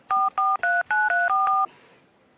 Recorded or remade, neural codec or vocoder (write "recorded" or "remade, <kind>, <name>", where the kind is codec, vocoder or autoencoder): recorded